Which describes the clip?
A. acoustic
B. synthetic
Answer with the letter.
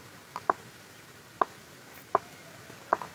B